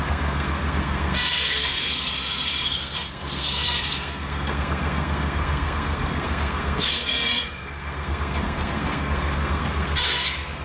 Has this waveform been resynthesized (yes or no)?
yes